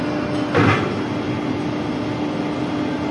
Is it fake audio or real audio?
real